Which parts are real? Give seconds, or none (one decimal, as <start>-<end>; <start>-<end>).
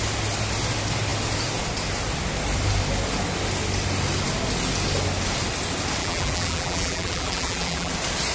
0.0-6.0; 7.9-8.3